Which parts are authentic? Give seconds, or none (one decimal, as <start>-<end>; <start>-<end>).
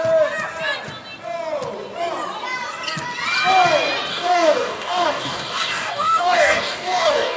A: 0.0-4.1